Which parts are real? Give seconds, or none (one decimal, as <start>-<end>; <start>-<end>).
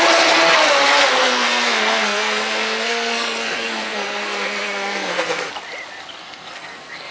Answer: 0.0-1.2; 5.5-6.2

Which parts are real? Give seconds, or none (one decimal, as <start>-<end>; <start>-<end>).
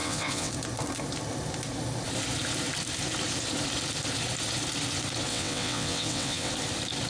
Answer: 0.5-5.3; 6.5-7.1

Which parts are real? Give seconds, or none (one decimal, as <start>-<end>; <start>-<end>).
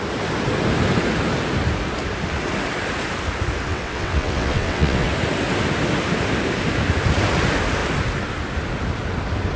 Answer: 0.0-3.7; 5.1-9.6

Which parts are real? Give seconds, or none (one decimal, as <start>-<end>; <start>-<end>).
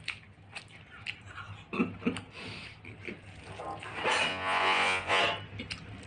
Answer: 0.0-4.3; 5.2-6.1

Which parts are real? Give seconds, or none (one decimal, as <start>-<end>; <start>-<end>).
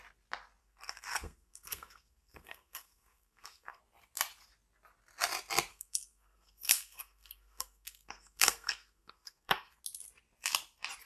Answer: 0.0-0.6; 3.8-5.7; 9.8-11.1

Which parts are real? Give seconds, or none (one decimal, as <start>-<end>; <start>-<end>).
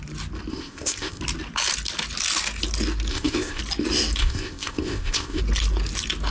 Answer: 0.0-0.5; 1.2-3.1; 3.6-4.2; 5.4-6.3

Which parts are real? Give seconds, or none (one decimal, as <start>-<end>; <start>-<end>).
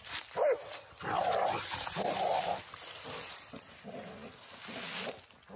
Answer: 0.0-5.6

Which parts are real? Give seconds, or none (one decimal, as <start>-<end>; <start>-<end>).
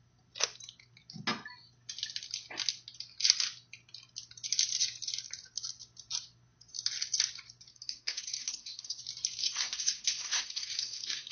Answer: 0.0-7.7; 9.0-9.4